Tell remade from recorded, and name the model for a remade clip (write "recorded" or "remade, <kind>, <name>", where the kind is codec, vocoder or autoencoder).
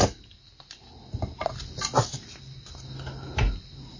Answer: recorded